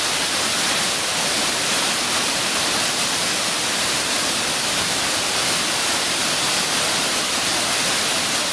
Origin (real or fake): real